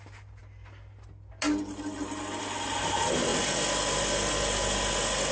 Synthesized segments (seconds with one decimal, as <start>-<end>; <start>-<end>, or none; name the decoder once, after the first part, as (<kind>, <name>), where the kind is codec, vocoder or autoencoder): none